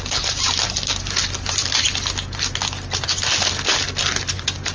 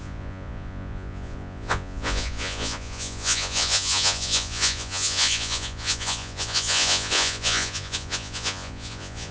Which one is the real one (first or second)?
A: first